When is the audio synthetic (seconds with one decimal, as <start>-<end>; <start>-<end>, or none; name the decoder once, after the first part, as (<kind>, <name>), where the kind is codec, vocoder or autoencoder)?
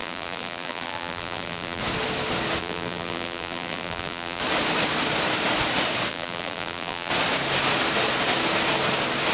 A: 0.0-1.8 (vocoder, BigVGAN v2); 2.6-4.4; 6.1-7.1